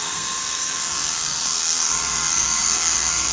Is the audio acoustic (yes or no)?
no